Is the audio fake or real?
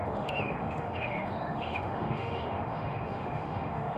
fake